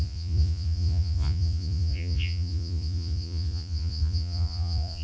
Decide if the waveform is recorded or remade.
remade